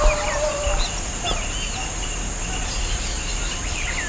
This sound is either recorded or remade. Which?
recorded